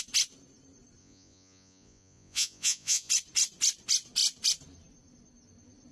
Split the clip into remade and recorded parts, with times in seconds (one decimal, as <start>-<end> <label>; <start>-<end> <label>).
0.0-1.0 recorded; 1.0-3.1 remade; 3.1-5.9 recorded